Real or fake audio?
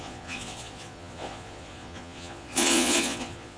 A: fake